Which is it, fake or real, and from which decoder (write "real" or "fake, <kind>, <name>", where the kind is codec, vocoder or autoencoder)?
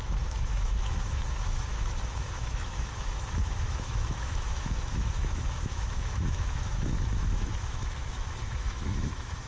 fake, autoencoder, DAC-VAE